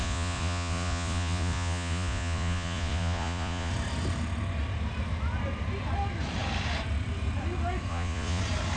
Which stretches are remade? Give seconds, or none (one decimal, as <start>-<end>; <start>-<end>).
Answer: 0.0-3.7; 7.9-8.4